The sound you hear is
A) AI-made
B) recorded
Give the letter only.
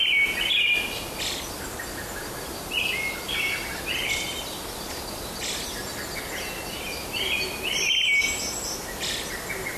B